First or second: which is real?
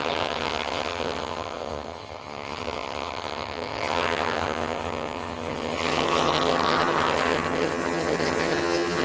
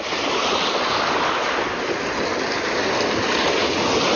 second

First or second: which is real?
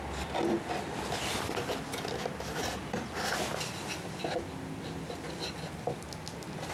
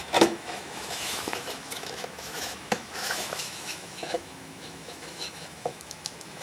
first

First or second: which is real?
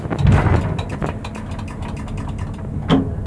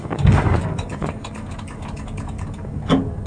first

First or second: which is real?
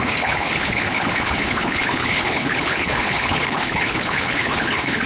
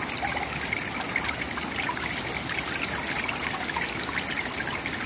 second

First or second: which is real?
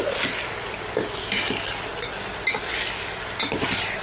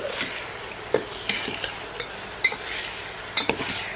first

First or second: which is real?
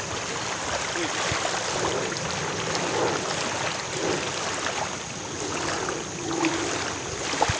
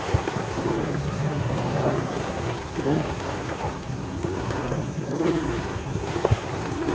first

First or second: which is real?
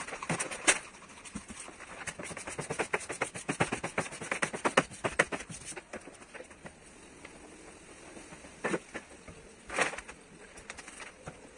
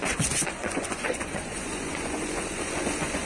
first